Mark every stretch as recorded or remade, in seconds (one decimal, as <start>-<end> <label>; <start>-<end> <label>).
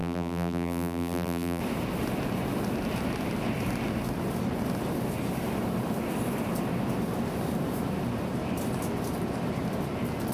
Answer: 0.0-1.6 remade; 1.6-10.3 recorded